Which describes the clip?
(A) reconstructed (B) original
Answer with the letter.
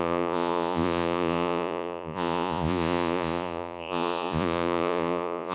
A